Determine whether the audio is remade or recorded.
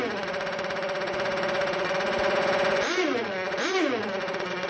remade